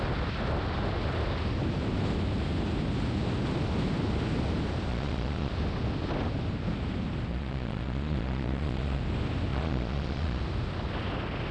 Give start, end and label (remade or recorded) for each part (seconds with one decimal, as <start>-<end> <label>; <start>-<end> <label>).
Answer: 0.0-4.9 recorded; 4.9-5.5 remade; 5.5-7.3 recorded; 7.3-9.0 remade; 9.0-9.5 recorded; 9.5-10.4 remade; 10.4-11.5 recorded